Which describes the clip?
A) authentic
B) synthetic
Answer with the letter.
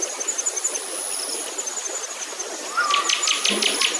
A